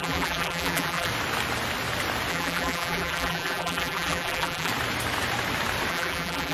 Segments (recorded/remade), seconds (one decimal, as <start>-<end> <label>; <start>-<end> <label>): 0.0-1.1 remade; 1.1-2.3 recorded; 2.3-4.7 remade; 4.7-5.9 recorded; 5.9-6.5 remade